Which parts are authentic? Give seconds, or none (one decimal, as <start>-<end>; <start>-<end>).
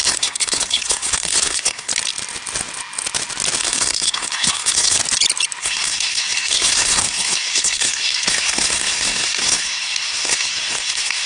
1.9-3.6; 5.0-5.6